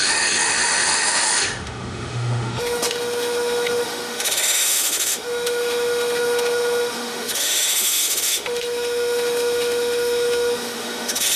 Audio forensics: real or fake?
fake